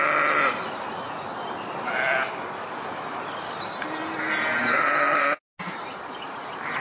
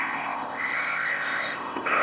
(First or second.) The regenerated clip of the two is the second